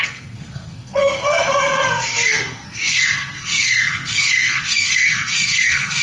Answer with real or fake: fake